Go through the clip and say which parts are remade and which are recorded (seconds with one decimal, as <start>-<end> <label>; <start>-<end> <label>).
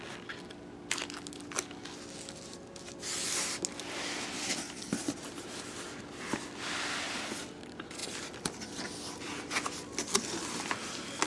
0.0-11.3 recorded